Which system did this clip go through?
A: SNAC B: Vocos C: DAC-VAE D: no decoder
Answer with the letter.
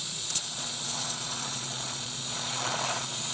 B